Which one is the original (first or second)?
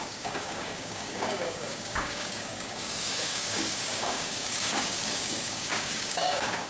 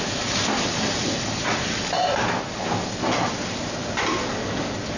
second